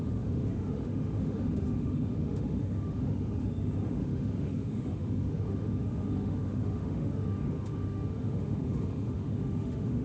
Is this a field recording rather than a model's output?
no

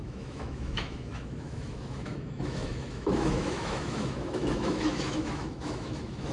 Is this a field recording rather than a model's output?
no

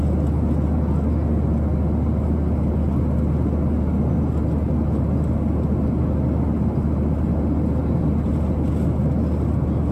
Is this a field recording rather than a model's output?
yes